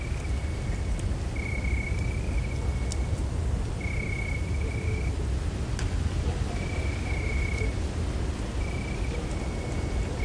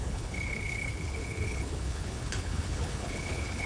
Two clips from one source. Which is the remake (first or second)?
second